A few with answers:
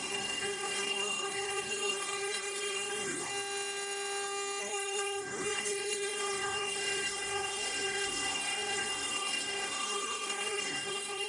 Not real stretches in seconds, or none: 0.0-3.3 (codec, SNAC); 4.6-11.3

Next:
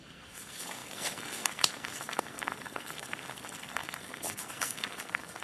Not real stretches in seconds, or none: 0.0-5.4 (codec, SNAC)